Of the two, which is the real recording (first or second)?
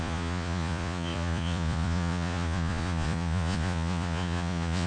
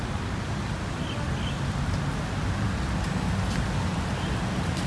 second